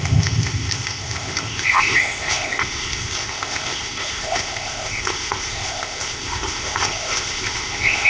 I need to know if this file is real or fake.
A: fake